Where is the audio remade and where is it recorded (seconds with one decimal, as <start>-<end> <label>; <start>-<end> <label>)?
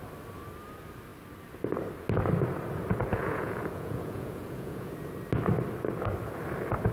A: 0.0-3.1 recorded; 3.1-4.9 remade; 4.9-6.9 recorded